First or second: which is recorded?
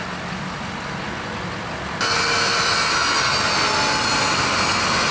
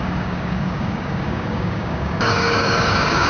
first